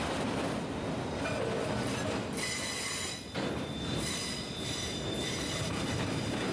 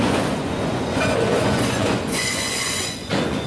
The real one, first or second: first